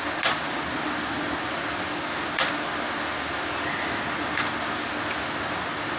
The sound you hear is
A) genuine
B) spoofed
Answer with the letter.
A